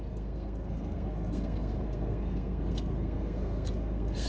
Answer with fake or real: fake